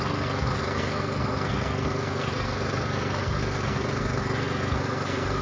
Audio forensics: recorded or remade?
remade